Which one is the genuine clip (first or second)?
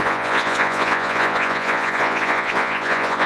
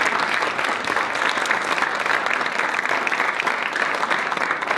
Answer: second